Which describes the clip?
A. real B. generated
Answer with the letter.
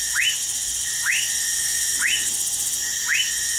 A